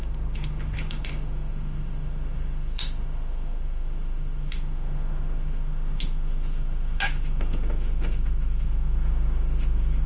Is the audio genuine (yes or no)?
no